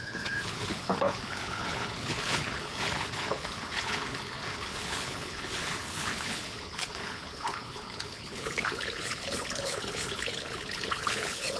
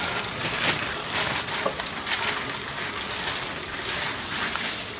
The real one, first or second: second